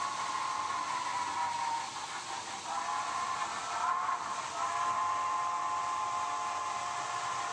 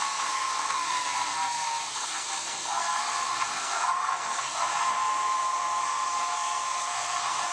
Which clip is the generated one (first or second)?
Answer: second